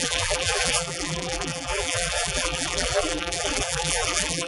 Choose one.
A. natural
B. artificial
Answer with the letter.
B